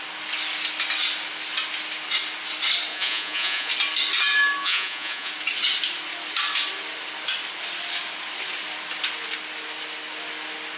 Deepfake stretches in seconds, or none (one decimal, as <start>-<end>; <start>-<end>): 2.9-3.7; 4.6-5.3